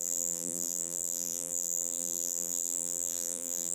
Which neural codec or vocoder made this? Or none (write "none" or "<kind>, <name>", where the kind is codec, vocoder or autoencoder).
vocoder, BigVGAN v2